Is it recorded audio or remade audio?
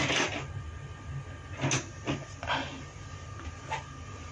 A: recorded